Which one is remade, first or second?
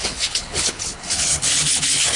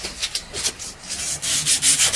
first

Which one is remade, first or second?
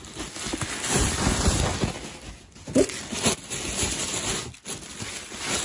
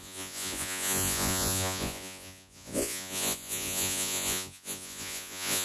second